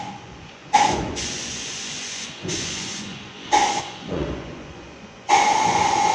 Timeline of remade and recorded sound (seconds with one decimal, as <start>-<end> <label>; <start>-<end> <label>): 0.0-6.1 remade